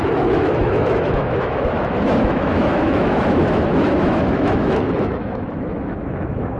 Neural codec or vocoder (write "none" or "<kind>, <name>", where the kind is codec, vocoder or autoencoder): autoencoder, DAC-VAE